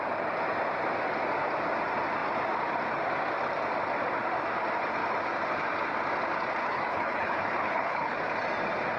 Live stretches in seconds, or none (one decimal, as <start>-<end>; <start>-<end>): 0.0-6.6; 8.2-9.0